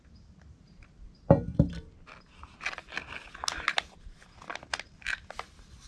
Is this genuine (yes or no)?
yes